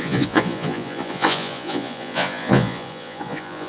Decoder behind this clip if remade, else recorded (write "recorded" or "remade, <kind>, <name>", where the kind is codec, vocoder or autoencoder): remade, vocoder, Vocos